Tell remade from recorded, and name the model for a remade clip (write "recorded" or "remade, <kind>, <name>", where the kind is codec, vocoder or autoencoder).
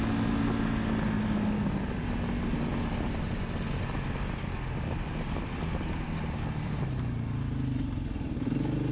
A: recorded